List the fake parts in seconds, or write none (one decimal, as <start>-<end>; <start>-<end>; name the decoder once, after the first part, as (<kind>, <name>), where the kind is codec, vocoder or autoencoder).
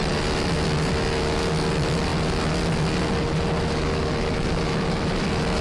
none